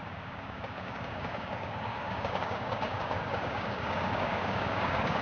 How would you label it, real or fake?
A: fake